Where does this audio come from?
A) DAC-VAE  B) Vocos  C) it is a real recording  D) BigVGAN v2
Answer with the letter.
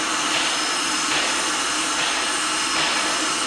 C